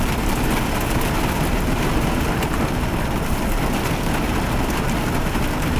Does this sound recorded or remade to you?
remade